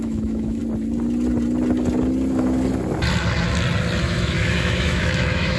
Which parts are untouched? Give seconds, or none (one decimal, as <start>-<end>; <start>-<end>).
0.6-4.0